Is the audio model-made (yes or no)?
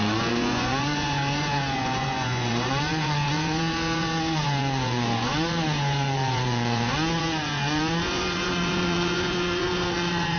yes